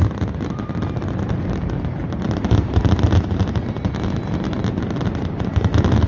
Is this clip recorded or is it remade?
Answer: recorded